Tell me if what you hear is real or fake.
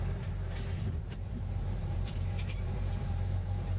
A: fake